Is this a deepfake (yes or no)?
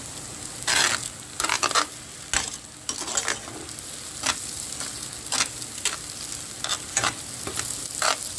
no